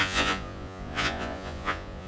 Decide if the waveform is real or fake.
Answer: fake